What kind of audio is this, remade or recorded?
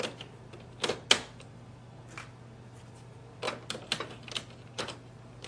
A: recorded